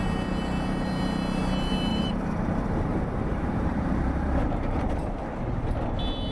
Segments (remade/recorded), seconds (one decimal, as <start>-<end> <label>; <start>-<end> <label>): 0.0-1.9 recorded; 1.9-5.1 remade; 5.1-6.3 recorded